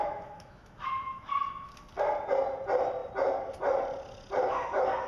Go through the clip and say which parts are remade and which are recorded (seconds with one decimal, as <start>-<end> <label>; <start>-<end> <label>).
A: 0.0-1.7 remade; 1.7-5.1 recorded